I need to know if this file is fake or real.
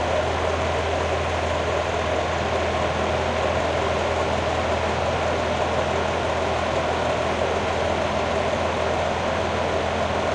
real